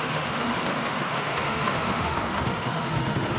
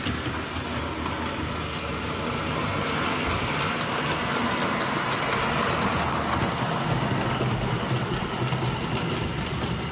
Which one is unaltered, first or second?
second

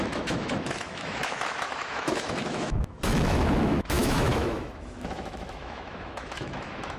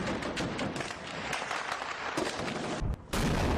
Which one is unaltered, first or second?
second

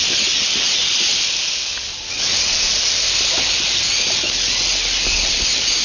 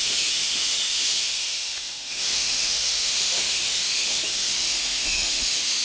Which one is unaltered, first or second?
first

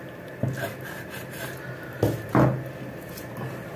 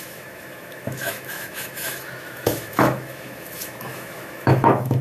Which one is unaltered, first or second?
first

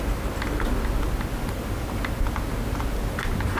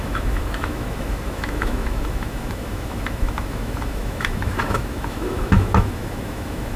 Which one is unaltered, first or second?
first